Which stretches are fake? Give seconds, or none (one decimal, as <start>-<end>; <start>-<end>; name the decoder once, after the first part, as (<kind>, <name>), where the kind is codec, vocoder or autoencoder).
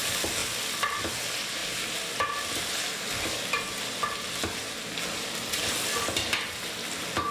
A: none